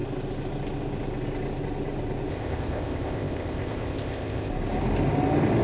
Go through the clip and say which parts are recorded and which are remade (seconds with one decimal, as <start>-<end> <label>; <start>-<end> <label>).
0.0-2.3 recorded; 2.3-4.5 remade; 4.5-5.6 recorded